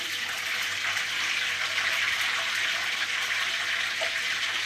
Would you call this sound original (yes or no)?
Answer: yes